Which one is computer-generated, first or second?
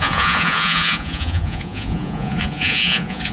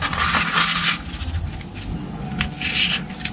first